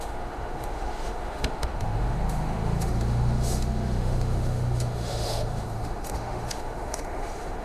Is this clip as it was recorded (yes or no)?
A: no